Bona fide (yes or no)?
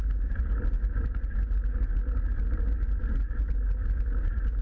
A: yes